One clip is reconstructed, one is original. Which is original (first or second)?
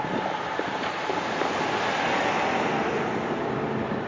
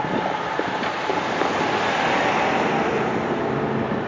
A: second